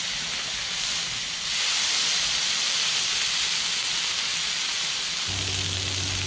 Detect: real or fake real